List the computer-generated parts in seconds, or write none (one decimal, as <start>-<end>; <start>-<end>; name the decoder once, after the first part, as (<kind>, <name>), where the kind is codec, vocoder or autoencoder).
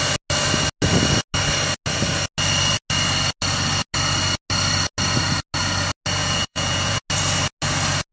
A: 6.2-7.0 (vocoder, Vocos)